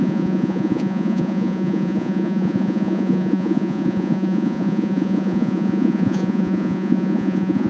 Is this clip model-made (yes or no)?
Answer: yes